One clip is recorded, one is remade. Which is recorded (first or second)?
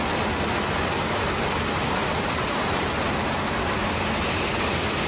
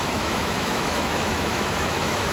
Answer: first